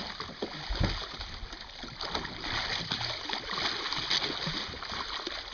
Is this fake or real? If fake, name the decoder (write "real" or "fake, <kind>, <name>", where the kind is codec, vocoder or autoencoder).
real